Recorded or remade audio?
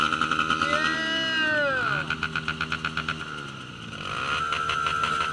recorded